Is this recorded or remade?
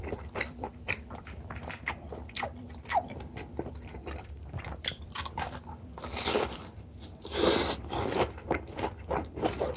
remade